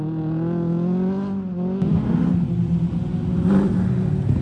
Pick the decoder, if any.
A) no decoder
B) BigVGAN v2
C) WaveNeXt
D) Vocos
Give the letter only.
A